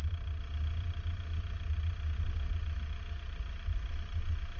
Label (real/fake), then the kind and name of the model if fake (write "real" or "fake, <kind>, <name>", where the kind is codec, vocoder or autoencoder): real